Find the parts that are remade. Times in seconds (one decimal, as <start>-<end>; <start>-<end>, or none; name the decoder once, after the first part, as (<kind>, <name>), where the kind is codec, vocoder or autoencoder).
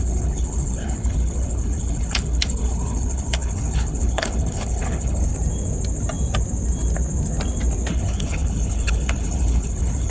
0.0-5.3 (codec, HILCodec); 7.9-10.1